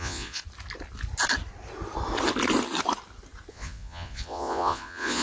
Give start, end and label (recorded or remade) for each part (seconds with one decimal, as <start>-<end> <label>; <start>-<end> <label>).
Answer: 0.0-0.4 remade; 0.4-3.5 recorded; 3.5-5.2 remade